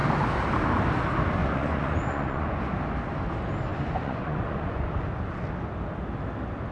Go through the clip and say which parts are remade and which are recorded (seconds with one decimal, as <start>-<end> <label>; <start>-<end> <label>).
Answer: 0.0-1.4 recorded; 1.4-2.6 remade; 2.6-3.7 recorded; 3.7-4.9 remade; 4.9-6.7 recorded